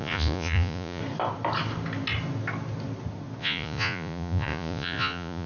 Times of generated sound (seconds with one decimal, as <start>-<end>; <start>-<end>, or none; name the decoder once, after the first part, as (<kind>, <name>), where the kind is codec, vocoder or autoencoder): 0.0-1.0 (vocoder, Vocos); 3.4-5.5